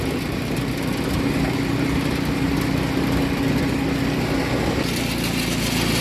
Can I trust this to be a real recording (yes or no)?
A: yes